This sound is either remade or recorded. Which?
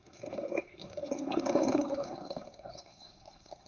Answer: remade